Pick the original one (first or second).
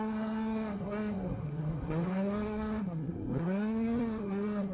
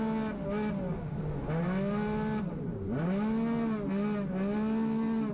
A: second